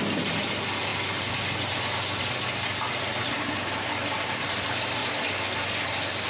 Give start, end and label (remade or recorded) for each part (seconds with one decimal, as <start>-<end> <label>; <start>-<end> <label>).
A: 0.0-6.3 recorded